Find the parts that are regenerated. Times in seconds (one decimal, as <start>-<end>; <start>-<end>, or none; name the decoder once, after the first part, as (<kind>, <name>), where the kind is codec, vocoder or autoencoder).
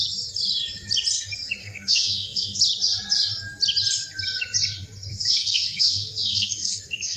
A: 1.6-2.6 (codec, SNAC); 5.1-7.2